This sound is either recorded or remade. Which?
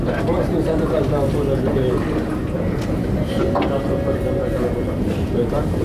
recorded